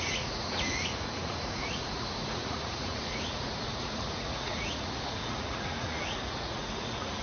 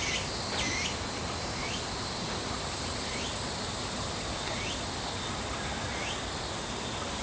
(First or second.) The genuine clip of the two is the second